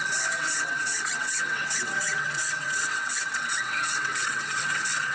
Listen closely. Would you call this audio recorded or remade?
remade